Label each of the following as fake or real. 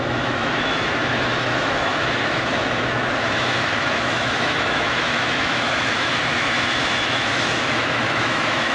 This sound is fake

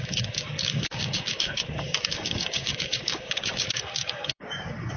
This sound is fake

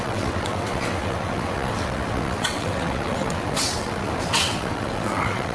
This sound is fake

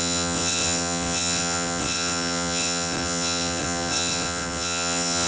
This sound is fake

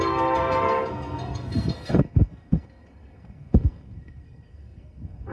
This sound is fake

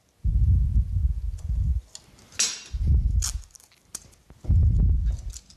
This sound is real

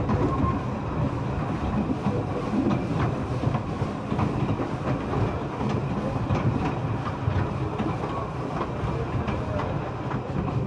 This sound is real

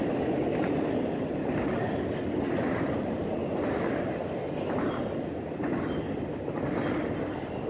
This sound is real